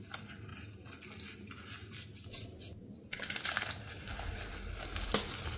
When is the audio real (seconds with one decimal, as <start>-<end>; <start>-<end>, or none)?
0.0-5.6

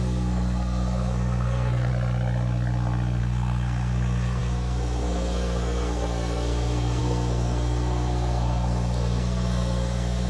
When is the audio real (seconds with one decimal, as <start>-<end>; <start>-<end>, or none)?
1.9-3.2